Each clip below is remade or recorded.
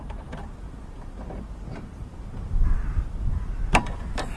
remade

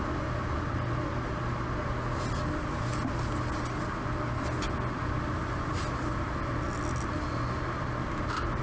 recorded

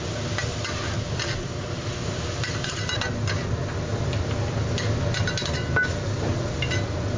recorded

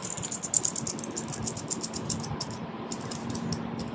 recorded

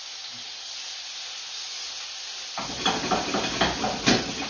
recorded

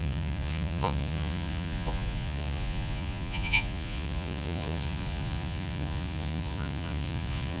remade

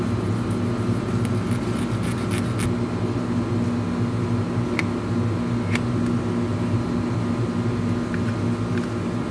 recorded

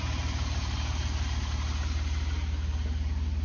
recorded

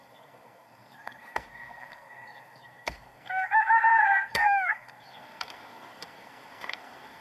remade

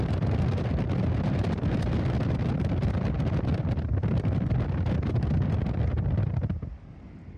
recorded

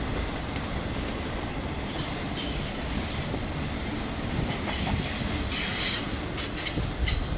recorded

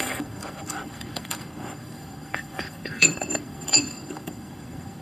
remade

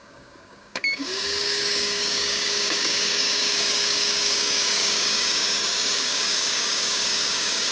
remade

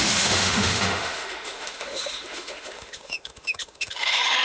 remade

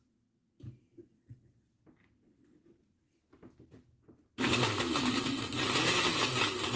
recorded